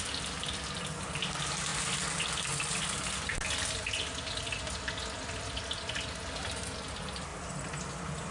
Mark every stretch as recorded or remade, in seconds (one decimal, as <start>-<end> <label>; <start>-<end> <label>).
0.0-8.3 recorded